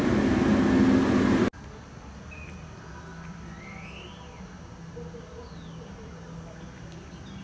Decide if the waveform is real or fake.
real